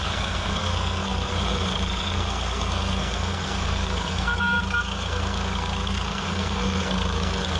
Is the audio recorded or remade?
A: remade